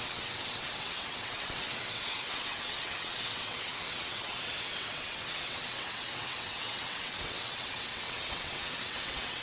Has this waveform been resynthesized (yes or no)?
yes